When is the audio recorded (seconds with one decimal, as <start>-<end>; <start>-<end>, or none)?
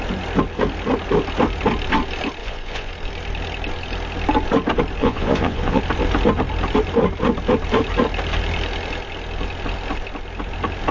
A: 0.0-2.4; 2.9-5.0; 5.8-10.9